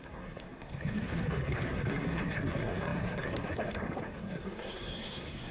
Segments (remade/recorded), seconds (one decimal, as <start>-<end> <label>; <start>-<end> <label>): 0.0-5.5 remade

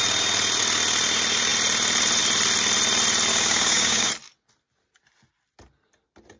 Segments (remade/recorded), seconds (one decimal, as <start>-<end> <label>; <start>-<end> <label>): 0.0-3.3 recorded; 3.3-4.1 remade; 4.1-6.4 recorded

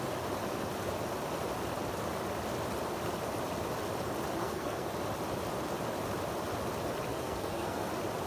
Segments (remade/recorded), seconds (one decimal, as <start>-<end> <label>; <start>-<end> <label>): 0.0-4.4 recorded; 4.4-4.9 remade; 4.9-7.1 recorded; 7.1-7.9 remade; 7.9-8.3 recorded

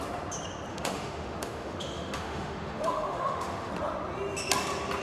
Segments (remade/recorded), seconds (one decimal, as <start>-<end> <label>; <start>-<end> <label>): 0.0-0.7 recorded; 0.7-3.7 remade; 3.7-5.0 recorded

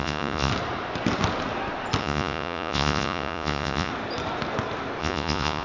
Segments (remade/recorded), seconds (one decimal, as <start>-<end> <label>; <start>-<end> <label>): 0.0-0.5 remade; 0.5-2.0 recorded; 2.0-3.9 remade; 3.9-5.0 recorded; 5.0-5.6 remade

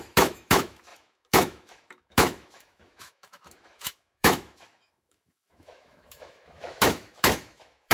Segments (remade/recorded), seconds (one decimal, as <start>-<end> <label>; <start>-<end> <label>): 0.0-7.9 remade

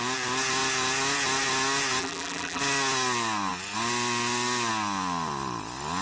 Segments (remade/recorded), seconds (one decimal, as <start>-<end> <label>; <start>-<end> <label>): 0.0-2.0 recorded; 2.0-2.6 remade; 2.6-6.0 recorded